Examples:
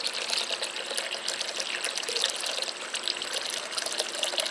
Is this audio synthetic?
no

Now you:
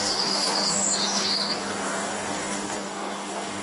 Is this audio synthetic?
yes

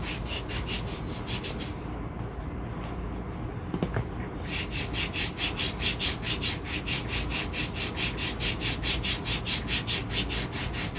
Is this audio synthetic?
no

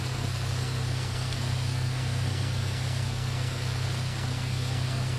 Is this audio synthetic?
yes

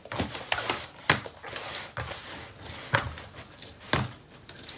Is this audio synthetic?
no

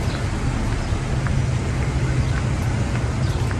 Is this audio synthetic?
no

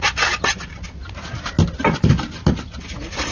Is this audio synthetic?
no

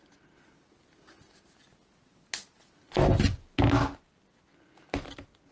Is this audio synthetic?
no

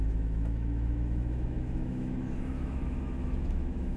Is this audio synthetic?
yes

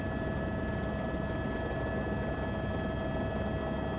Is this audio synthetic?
no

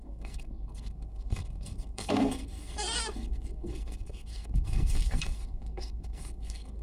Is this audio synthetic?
yes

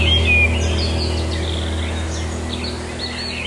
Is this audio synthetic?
no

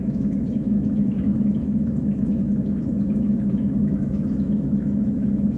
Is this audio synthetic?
yes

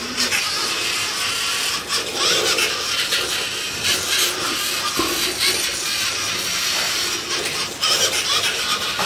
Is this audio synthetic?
no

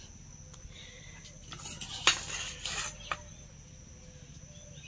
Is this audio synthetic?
no